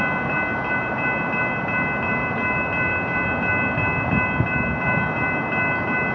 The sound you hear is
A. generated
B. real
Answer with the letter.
B